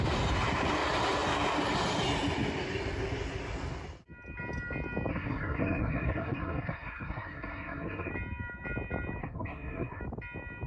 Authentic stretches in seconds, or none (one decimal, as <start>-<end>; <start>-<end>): 0.0-5.1; 8.1-9.2; 10.0-10.7